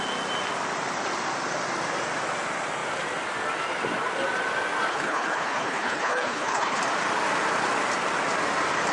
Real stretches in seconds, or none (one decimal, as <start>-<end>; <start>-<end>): 0.0-4.9; 6.8-8.9